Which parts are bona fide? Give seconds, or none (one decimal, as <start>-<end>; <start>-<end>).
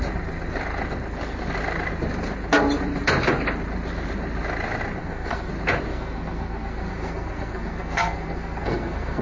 0.0-5.0; 5.5-5.9